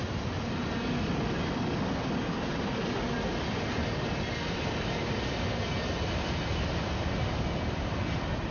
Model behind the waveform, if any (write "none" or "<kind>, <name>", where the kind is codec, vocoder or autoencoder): none